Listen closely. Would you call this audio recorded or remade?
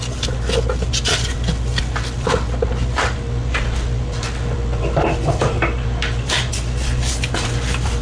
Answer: recorded